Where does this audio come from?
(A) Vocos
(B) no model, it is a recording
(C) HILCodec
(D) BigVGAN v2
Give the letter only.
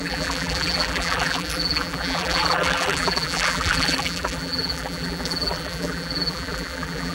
D